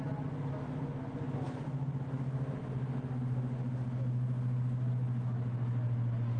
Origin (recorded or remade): recorded